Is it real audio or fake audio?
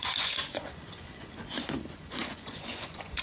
fake